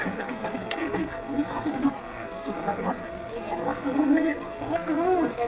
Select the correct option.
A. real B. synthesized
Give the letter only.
B